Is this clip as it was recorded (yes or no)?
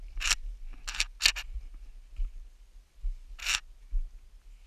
yes